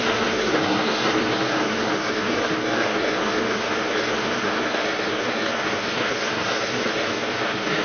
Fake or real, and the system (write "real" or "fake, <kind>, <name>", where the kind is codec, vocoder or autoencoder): fake, codec, SNAC